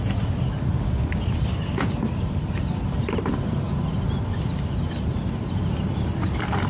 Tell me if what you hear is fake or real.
real